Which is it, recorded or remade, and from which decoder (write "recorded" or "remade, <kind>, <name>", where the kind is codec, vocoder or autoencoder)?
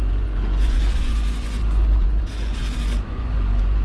remade, vocoder, Vocos